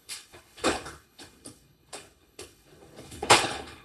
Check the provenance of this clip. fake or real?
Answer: fake